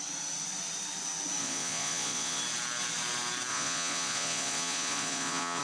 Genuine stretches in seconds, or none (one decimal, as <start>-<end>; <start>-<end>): 0.0-1.4; 2.4-3.5